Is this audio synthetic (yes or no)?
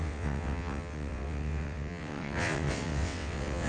yes